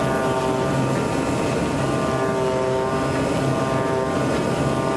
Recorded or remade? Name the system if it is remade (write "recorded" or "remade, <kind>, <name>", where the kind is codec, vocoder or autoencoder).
recorded